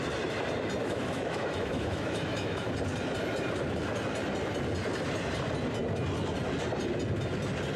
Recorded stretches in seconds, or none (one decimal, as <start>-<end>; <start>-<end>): 0.0-0.8; 2.7-7.8